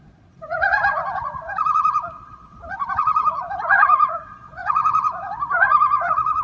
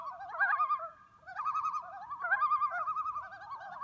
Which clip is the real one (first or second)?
second